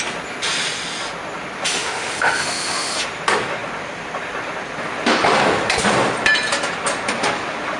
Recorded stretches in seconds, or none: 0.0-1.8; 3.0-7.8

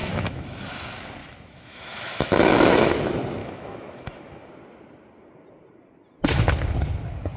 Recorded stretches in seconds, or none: 0.6-1.2; 2.9-3.4; 4.5-7.4

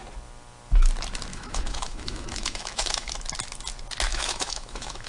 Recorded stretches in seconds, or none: 0.0-1.3; 3.1-4.1

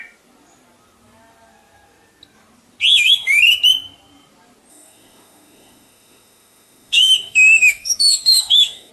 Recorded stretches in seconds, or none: 0.0-2.9; 3.4-4.7

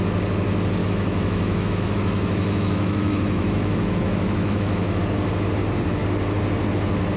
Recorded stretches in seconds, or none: 0.0-0.8; 5.0-7.2

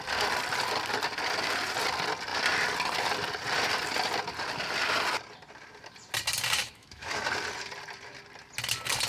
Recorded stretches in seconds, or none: 0.0-6.6; 7.2-9.1

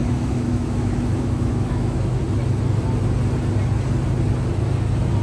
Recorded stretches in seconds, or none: 2.2-5.2